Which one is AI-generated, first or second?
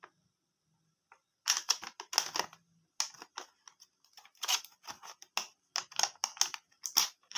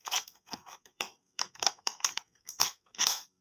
second